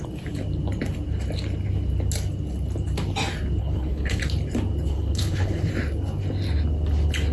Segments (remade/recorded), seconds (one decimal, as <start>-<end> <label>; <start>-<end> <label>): 0.0-3.6 recorded; 3.6-4.2 remade; 4.2-4.9 recorded; 4.9-5.7 remade; 5.7-7.3 recorded